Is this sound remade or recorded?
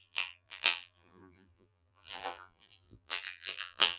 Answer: remade